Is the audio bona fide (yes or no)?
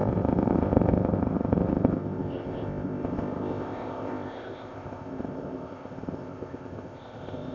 no